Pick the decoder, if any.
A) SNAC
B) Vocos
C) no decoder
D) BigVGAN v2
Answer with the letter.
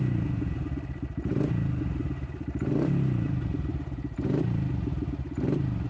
D